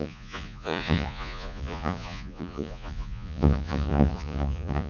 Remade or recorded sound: remade